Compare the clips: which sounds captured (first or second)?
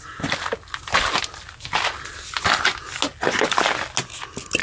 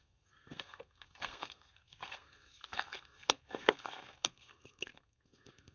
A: first